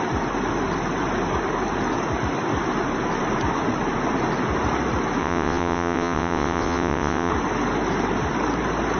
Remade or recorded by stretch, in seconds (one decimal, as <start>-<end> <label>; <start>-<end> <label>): 0.0-5.2 recorded; 5.2-7.3 remade; 7.3-9.0 recorded